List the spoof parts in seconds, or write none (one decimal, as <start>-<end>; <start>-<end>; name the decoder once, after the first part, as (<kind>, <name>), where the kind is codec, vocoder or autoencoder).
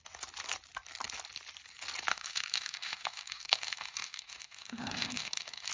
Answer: 2.1-5.7 (autoencoder, DAC-VAE)